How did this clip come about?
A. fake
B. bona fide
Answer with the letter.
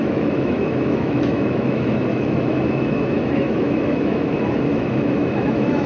A